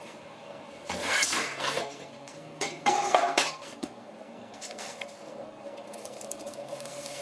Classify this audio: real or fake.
fake